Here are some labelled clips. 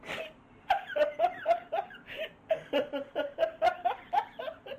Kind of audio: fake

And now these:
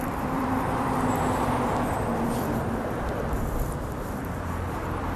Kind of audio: fake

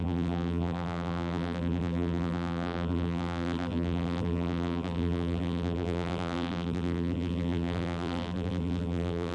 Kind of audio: fake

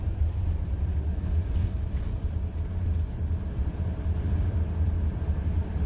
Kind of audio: fake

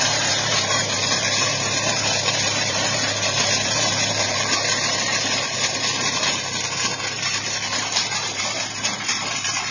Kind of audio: fake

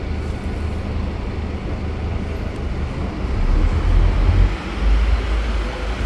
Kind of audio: real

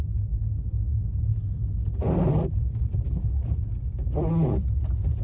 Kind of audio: real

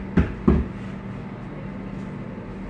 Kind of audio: fake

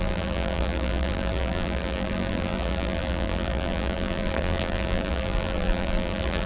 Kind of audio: fake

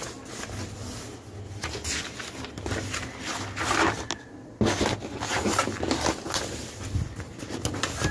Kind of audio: real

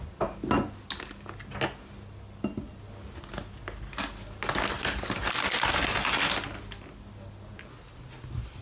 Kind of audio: real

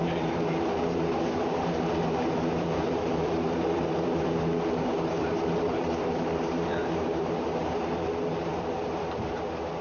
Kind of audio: fake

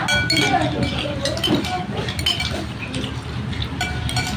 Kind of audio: real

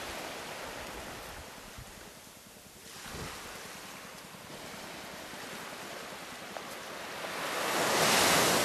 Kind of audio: real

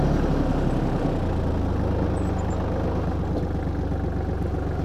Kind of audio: real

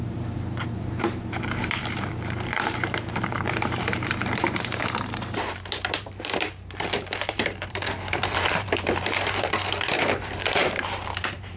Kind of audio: fake